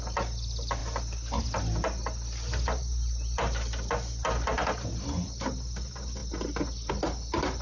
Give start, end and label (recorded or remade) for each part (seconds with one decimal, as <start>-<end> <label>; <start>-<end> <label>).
0.0-7.6 recorded